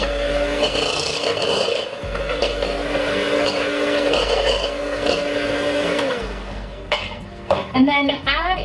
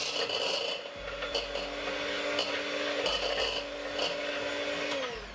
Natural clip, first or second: second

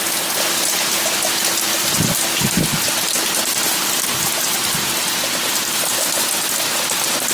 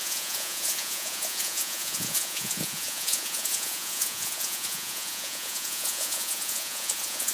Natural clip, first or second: first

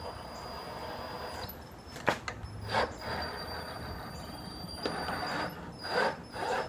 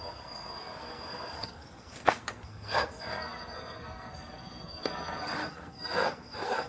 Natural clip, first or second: first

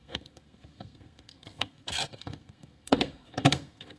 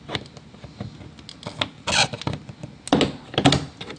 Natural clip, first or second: second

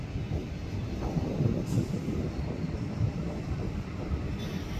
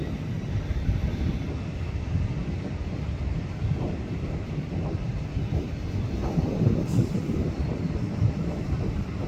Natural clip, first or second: first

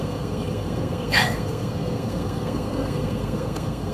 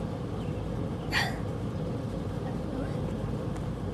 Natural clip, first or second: second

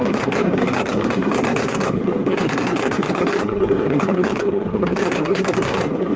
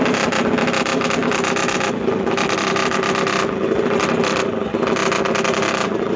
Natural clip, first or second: second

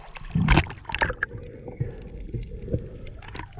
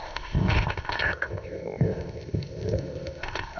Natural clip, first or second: first